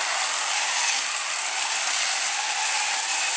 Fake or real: real